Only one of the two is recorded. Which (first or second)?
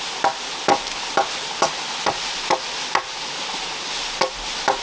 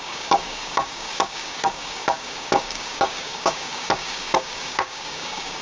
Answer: first